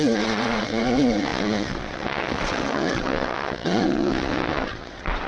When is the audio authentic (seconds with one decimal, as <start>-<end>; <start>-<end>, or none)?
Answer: none